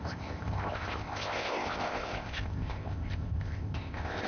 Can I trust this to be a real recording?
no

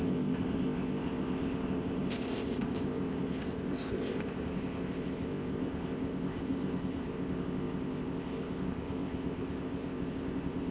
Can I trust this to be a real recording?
no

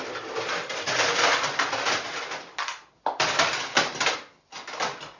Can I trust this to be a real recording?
yes